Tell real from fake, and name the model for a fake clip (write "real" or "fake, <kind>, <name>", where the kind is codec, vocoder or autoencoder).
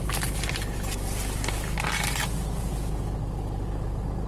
real